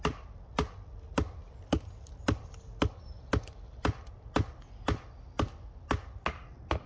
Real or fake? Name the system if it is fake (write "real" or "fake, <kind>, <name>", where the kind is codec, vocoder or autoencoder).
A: real